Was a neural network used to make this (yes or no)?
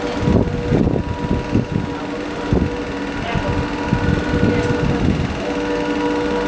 no